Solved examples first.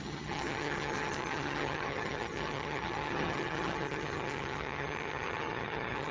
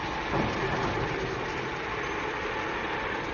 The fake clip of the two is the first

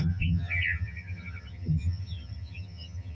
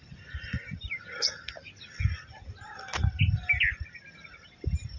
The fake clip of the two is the first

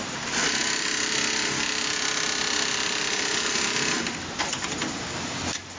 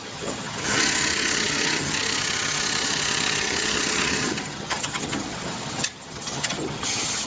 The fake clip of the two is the second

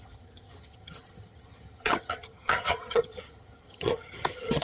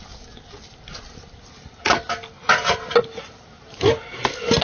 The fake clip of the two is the first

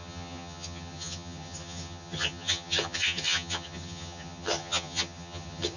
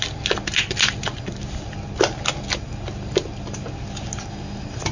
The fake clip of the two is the first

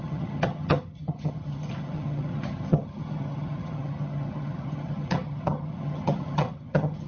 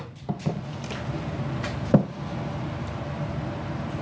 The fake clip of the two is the first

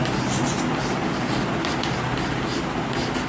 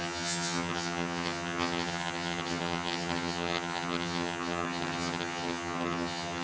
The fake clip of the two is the second